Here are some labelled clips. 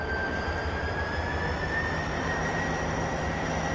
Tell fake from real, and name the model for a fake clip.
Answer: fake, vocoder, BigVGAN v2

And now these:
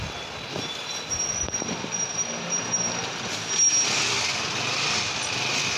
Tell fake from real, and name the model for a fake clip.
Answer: real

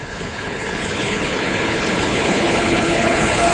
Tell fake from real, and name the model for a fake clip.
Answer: fake, codec, HILCodec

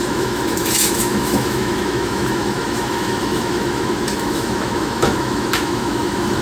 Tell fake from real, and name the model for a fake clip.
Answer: fake, autoencoder, DAC-VAE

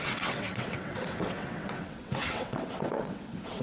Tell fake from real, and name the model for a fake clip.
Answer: fake, vocoder, WaveNeXt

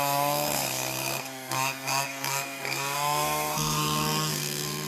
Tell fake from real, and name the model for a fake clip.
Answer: fake, codec, SNAC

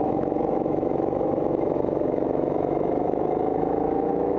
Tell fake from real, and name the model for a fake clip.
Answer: fake, autoencoder, DAC-VAE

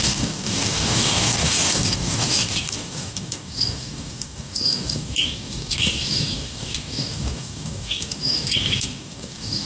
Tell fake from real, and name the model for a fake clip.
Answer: fake, codec, DAC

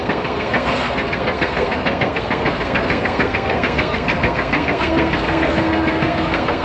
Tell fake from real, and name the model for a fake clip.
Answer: fake, codec, SNAC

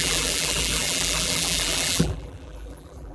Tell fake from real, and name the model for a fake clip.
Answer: fake, vocoder, BigVGAN v2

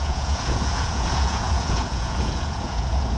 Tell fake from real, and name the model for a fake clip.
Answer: fake, vocoder, Vocos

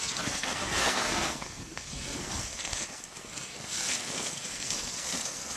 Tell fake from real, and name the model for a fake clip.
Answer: fake, codec, SNAC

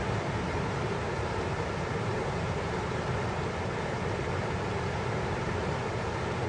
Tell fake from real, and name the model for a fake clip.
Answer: fake, vocoder, BigVGAN v2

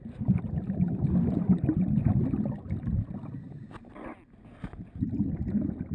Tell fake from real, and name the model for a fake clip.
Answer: real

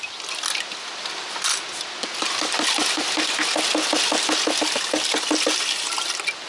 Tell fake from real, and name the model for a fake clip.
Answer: real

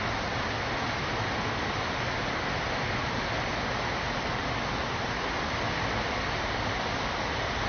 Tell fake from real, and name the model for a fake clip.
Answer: real